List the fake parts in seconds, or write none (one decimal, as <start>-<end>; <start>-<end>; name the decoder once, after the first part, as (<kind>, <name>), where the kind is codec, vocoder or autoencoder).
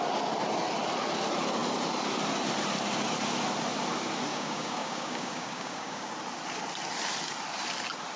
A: 4.3-6.1 (codec, DAC)